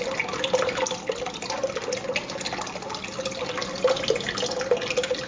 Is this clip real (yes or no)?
yes